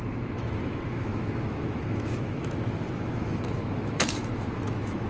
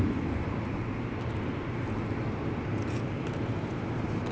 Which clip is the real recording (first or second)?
second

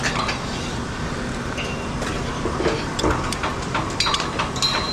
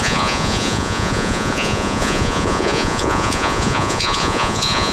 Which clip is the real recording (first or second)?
first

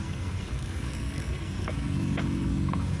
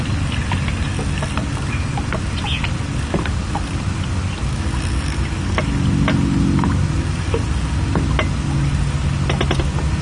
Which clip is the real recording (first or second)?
second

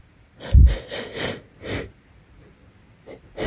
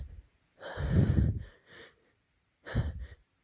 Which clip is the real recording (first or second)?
first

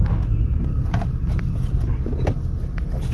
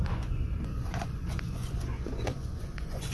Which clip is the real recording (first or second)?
first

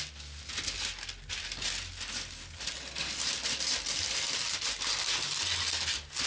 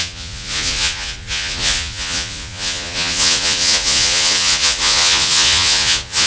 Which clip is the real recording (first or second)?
first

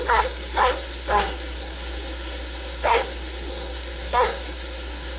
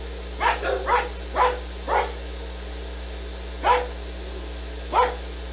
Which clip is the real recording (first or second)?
second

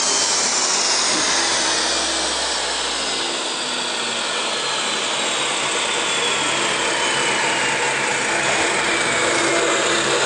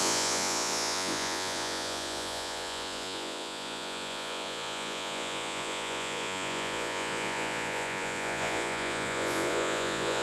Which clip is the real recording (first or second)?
first